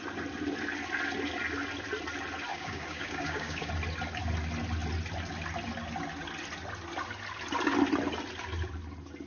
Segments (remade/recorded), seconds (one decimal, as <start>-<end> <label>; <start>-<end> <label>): 0.0-2.5 recorded; 2.5-3.7 remade; 3.7-9.3 recorded